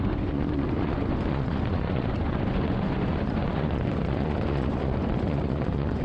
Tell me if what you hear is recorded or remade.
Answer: remade